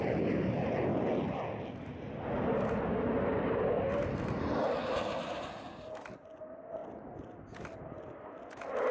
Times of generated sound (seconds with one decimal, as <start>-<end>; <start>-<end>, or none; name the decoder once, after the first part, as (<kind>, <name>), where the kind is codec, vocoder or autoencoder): none